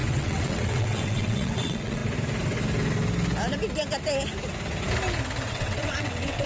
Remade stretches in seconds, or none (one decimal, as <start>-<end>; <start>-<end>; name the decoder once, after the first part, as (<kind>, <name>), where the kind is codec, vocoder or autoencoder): 0.0-2.0 (vocoder, WaveNeXt); 5.5-6.5